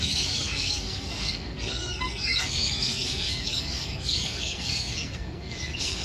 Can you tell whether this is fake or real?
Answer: fake